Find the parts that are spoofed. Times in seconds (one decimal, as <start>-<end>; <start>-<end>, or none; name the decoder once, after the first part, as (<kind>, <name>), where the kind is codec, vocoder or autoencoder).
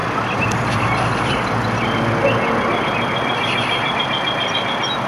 none